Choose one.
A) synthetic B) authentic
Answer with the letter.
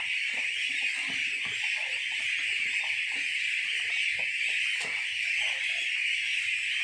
B